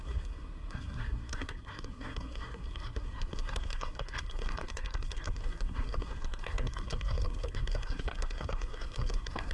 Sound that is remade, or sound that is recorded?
remade